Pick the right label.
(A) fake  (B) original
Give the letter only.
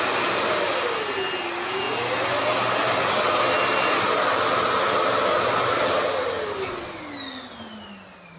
B